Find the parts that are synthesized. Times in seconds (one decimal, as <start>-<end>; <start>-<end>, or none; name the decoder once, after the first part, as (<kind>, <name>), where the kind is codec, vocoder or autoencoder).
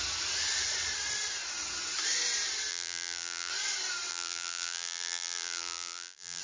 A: 2.7-3.5 (vocoder, BigVGAN v2); 4.1-6.4